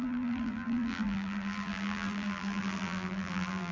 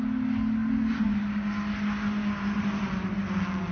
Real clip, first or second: second